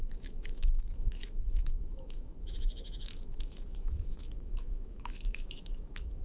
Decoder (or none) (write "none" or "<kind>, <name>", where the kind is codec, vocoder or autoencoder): autoencoder, DAC-VAE